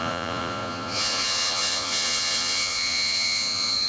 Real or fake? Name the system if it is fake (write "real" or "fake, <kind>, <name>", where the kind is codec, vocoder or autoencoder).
fake, vocoder, Vocos